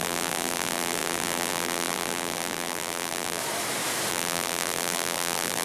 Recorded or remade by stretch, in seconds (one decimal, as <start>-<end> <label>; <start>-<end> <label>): 0.0-3.4 remade; 3.4-4.1 recorded; 4.1-5.6 remade